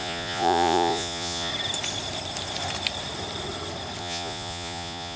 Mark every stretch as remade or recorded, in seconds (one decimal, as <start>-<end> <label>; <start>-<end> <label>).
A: 0.0-1.5 remade; 1.5-4.0 recorded; 4.0-5.2 remade